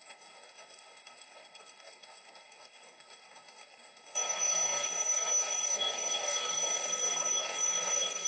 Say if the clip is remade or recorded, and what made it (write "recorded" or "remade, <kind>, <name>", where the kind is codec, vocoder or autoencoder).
remade, codec, DAC